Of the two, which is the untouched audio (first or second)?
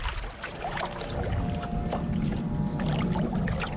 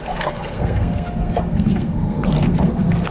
first